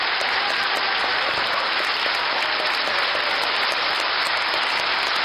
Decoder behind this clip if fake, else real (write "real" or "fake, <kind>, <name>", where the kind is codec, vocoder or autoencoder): real